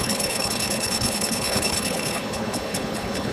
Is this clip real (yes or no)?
no